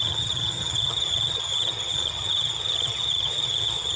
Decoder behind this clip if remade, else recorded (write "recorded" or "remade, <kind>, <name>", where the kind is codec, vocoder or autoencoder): remade, vocoder, HiFi-GAN